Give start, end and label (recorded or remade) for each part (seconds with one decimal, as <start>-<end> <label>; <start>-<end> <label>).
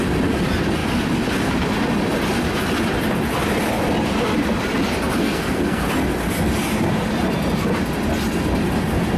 0.0-5.2 recorded; 5.2-5.8 remade; 5.8-9.2 recorded